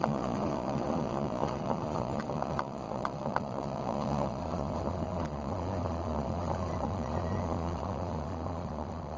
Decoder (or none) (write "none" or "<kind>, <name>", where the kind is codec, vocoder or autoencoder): vocoder, Vocos